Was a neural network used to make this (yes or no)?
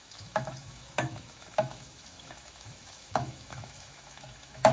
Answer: yes